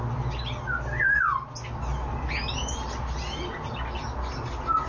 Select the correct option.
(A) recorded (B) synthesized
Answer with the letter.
A